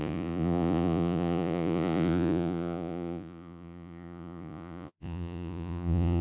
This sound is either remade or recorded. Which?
remade